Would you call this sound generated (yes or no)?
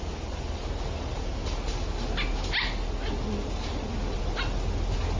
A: no